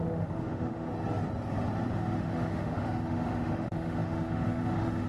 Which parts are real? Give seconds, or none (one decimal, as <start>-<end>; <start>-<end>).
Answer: 0.9-1.9